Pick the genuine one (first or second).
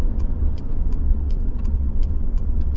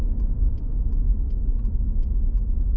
second